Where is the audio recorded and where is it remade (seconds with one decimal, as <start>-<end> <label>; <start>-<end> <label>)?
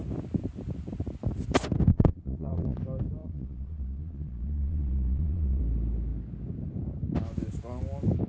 0.0-1.9 recorded; 1.9-2.8 remade; 2.8-3.2 recorded; 3.2-5.6 remade; 5.6-8.3 recorded